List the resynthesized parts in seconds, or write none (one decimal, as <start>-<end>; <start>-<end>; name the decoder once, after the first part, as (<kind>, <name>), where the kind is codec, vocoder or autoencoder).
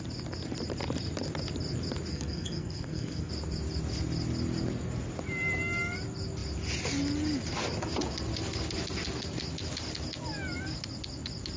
2.1-3.3 (codec, SNAC)